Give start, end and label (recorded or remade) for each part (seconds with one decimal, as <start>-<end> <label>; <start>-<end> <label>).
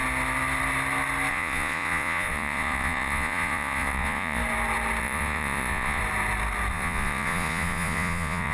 0.0-1.3 recorded; 1.3-4.4 remade; 4.4-5.0 recorded; 5.0-6.0 remade; 6.0-6.7 recorded; 6.7-8.5 remade